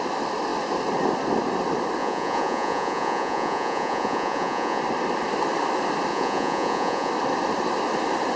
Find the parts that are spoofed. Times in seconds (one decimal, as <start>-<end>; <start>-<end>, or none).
2.0-4.8; 6.1-7.1

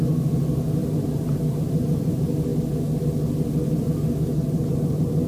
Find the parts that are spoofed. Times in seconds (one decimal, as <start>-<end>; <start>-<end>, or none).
none

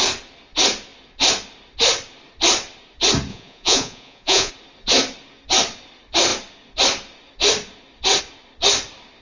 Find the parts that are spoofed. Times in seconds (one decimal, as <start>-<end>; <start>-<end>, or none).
3.3-4.5

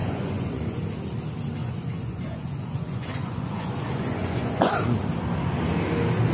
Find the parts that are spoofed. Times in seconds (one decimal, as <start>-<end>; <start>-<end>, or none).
0.0-0.8; 1.6-4.7

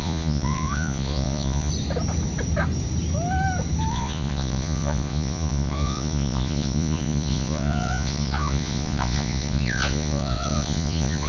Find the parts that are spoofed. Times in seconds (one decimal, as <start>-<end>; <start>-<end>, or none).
0.0-1.7; 3.9-11.3